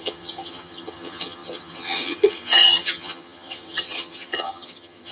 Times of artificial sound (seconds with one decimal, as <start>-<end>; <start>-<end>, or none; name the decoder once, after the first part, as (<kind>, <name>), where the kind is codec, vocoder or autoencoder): 0.0-5.1 (vocoder, HiFi-GAN)